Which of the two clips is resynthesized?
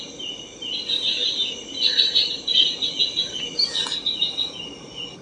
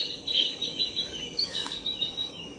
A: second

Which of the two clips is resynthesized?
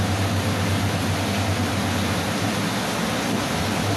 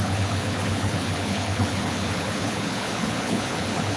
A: second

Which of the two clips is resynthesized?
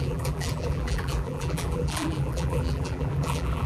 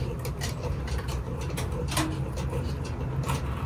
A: first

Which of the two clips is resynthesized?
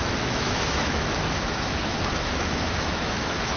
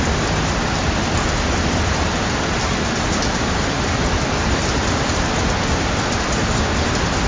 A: first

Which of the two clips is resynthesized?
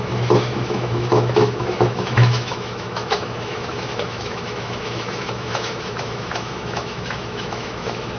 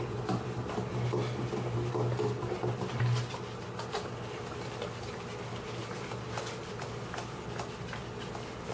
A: first